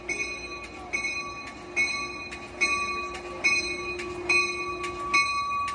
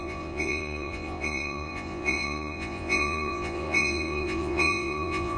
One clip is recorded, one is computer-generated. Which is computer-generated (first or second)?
second